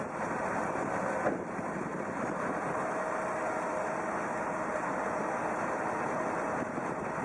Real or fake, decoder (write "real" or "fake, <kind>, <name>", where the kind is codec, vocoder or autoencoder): real